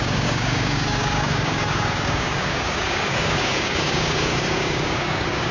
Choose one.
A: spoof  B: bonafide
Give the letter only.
A